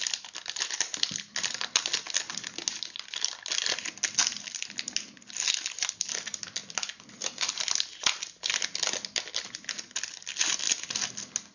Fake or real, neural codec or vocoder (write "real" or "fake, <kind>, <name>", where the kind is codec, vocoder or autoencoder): real